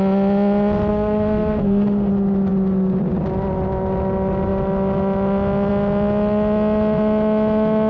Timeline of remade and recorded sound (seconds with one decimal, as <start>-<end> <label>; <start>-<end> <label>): 0.0-0.9 recorded; 0.9-2.1 remade; 2.1-7.9 recorded